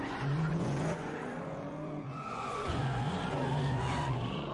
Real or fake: fake